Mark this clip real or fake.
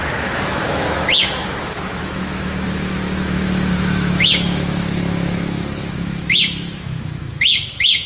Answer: fake